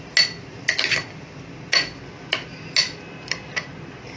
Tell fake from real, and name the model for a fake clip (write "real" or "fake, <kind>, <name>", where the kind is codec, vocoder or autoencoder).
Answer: real